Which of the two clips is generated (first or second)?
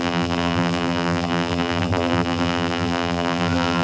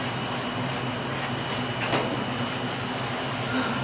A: first